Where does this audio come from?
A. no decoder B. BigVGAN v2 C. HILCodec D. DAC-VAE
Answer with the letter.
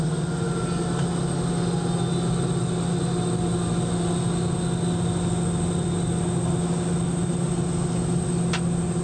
A